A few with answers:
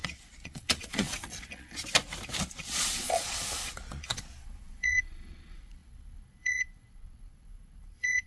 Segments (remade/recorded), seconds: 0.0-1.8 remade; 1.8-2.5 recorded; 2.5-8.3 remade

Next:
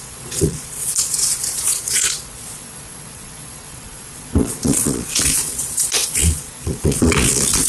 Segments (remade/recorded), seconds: 0.0-7.7 remade

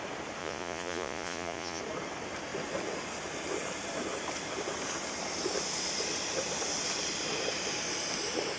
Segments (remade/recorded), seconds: 0.0-0.4 recorded; 0.4-1.8 remade; 1.8-8.6 recorded